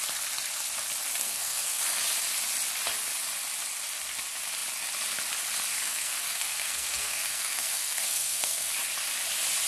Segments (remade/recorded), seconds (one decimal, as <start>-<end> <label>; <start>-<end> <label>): 0.0-1.2 recorded; 1.2-1.8 remade; 1.8-5.7 recorded; 5.7-8.7 remade; 8.7-9.7 recorded

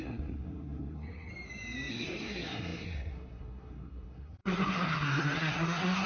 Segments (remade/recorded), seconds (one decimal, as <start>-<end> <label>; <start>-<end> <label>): 0.0-1.3 remade; 1.3-1.9 recorded; 1.9-6.1 remade

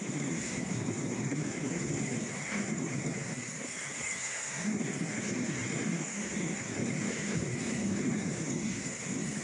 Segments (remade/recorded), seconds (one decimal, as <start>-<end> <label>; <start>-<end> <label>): 0.0-9.4 remade

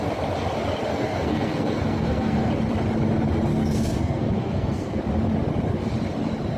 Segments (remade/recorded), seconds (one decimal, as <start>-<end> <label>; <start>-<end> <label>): 0.0-0.9 recorded; 0.9-2.5 remade; 2.5-3.5 recorded; 3.5-5.0 remade; 5.0-6.6 recorded